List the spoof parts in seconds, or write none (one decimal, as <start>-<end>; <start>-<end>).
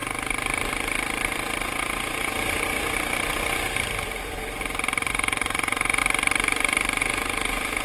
1.6-2.3; 5.1-6.0; 7.0-7.8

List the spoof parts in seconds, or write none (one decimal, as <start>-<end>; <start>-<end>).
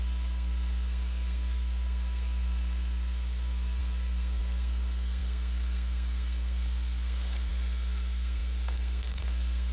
0.0-9.7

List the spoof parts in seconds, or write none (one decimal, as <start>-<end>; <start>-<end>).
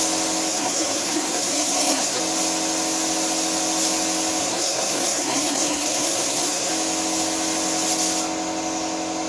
0.5-2.2; 4.4-6.7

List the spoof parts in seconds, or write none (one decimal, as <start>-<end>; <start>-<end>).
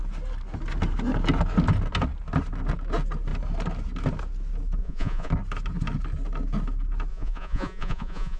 4.8-5.3; 7.1-8.4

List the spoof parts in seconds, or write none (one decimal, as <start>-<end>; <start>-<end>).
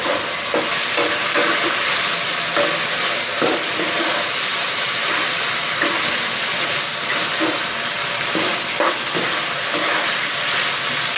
4.5-5.9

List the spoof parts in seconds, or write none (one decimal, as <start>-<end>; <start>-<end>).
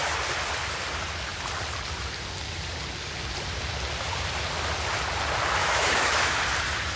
5.6-6.4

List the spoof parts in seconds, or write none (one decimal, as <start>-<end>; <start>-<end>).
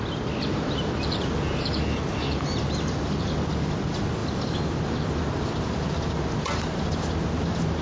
4.2-5.0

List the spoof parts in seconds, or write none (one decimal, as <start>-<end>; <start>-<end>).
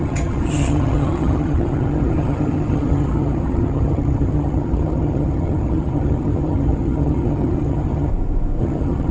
0.0-8.1; 8.6-9.1